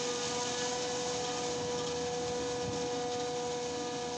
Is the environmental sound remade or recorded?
recorded